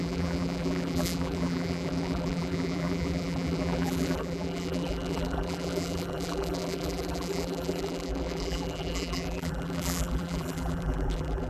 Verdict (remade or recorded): remade